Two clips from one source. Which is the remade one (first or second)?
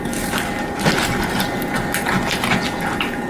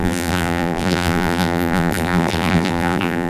second